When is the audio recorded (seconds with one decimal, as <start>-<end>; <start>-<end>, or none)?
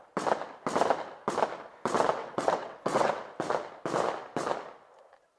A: 0.0-2.2; 3.1-5.4